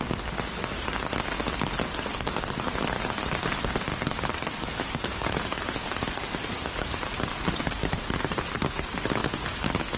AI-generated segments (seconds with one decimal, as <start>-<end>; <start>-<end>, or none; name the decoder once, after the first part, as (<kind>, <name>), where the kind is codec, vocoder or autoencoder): 3.9-7.6 (vocoder, BigVGAN v2)